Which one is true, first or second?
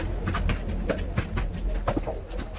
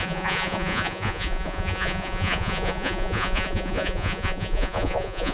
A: first